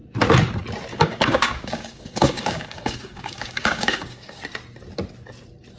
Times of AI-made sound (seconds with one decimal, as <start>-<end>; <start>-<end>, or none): 0.9-4.4